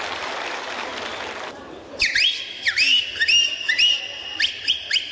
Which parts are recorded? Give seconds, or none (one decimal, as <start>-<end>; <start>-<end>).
1.1-4.2